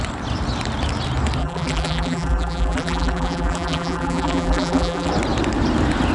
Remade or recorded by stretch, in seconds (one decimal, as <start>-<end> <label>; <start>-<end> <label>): 0.0-1.4 recorded; 1.4-5.1 remade; 5.1-6.1 recorded